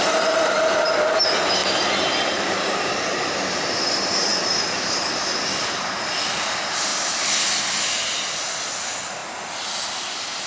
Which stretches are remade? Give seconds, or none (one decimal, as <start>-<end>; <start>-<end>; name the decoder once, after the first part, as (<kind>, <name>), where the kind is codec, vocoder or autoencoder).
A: none